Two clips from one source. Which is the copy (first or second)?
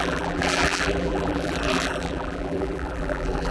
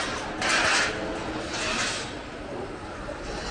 first